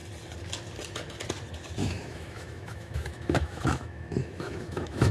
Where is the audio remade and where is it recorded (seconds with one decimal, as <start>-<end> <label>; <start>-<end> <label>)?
0.0-1.8 recorded; 1.8-5.1 remade